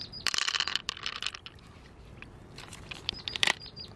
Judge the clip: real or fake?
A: fake